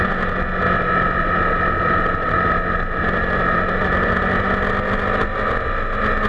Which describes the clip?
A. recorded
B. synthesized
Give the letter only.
A